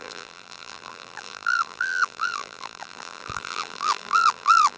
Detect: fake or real fake